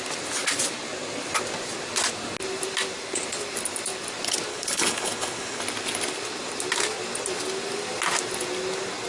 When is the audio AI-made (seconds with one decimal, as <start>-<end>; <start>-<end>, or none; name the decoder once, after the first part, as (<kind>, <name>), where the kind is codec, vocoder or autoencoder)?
4.5-5.6 (codec, HILCodec)